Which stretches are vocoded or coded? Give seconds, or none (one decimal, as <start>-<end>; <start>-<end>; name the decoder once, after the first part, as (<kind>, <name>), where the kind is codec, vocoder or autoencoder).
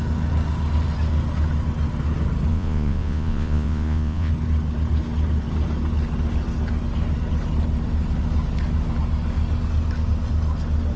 2.5-4.3 (vocoder, Vocos)